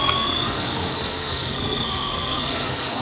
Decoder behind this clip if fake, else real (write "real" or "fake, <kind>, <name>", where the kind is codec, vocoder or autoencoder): fake, codec, SNAC